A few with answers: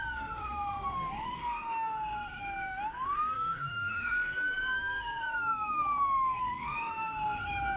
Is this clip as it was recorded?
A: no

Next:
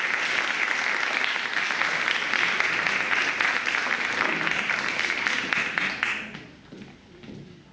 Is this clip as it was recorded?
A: yes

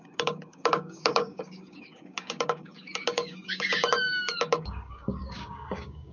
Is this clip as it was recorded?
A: no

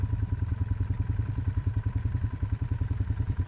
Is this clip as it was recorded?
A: no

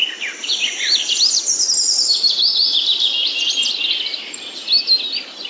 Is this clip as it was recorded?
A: yes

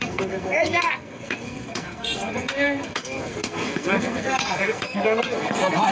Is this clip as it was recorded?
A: no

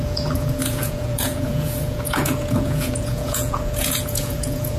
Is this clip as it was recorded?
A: no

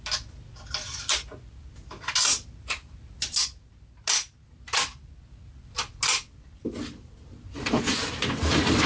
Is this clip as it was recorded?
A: yes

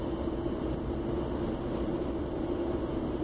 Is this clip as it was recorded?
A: yes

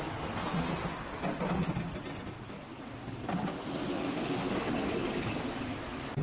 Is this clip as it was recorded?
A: yes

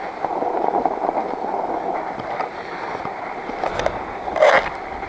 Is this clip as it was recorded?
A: yes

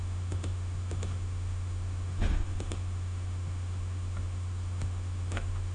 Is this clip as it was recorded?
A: no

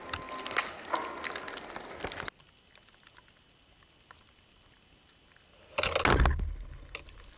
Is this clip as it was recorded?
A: yes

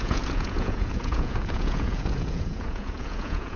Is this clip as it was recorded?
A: no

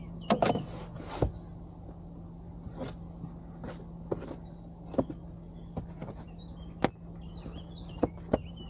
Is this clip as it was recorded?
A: yes